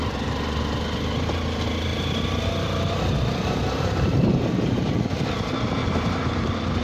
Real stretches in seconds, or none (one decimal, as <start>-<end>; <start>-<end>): 0.0-4.3; 4.8-5.8